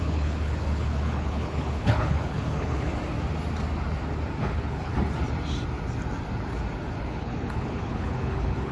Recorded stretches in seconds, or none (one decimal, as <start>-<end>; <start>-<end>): 2.9-4.4; 4.9-7.0